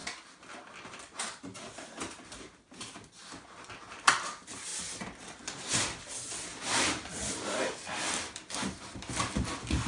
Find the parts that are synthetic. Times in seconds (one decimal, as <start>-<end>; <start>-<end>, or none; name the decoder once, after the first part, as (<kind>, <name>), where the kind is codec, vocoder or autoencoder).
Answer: none

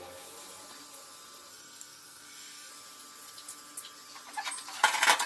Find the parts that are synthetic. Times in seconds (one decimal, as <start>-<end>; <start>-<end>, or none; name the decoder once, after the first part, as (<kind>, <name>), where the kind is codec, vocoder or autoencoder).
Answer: 1.5-2.7 (codec, SNAC)